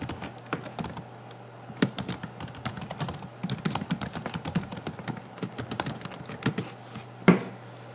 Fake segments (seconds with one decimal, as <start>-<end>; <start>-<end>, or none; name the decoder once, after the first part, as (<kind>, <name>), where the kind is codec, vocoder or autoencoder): 3.4-5.7 (vocoder, BigVGAN v2)